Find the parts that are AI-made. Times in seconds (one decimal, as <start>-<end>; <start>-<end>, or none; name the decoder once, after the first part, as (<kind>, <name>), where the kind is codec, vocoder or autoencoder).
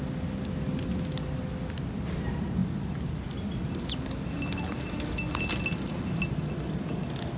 none